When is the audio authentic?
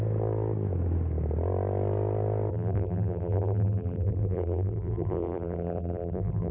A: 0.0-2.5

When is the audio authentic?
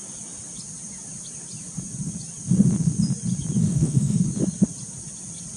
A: 0.0-3.6; 4.2-5.6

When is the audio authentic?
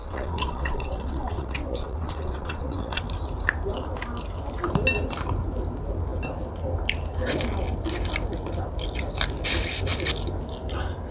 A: 3.0-11.1